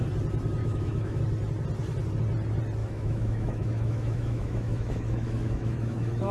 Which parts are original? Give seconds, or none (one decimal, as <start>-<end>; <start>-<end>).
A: 0.0-0.6; 1.2-2.8